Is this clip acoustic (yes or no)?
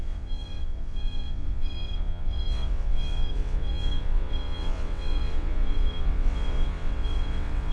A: no